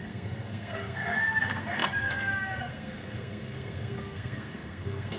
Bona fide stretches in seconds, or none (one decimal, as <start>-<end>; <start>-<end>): none